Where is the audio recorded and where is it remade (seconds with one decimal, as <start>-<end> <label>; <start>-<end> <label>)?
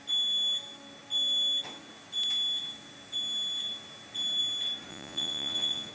0.0-4.9 recorded; 4.9-5.9 remade